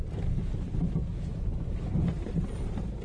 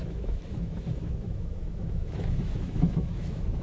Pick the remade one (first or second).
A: second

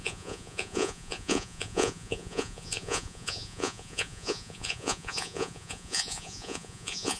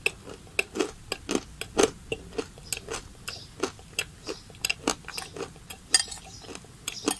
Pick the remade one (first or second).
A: first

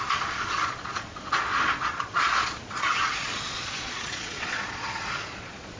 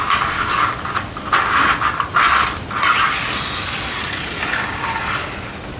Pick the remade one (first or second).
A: first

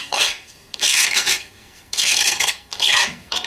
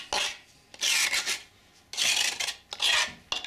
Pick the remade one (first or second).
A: first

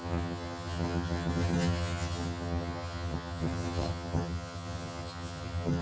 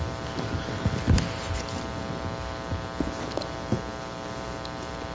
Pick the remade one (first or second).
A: first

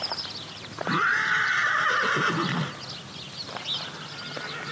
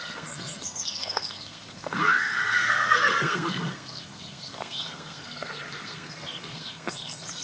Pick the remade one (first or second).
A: second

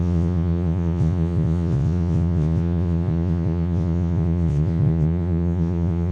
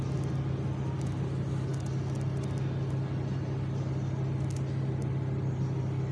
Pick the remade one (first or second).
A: first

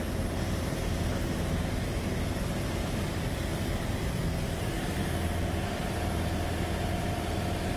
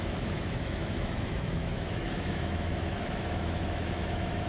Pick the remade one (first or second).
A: second